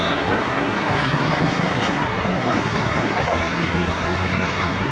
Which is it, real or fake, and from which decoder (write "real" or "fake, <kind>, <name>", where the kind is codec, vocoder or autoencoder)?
fake, codec, SNAC